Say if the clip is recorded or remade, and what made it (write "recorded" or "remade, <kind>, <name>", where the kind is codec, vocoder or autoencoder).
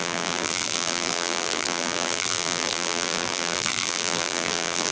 remade, vocoder, BigVGAN v2